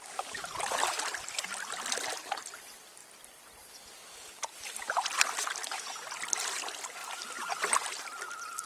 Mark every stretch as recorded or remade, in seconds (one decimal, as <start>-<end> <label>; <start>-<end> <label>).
0.0-7.0 recorded; 7.0-7.9 remade; 7.9-8.7 recorded